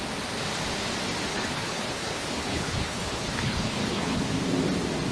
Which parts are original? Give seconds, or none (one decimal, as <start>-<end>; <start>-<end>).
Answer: 0.0-1.3; 4.2-5.1